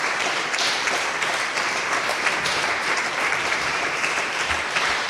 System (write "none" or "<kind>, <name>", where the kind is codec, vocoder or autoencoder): vocoder, BigVGAN v2